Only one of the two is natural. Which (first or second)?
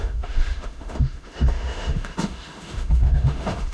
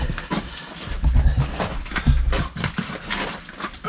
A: second